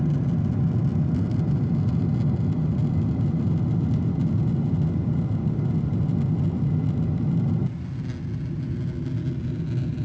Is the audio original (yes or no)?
yes